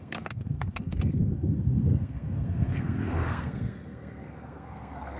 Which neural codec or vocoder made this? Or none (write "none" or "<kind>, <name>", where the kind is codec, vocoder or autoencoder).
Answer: codec, SNAC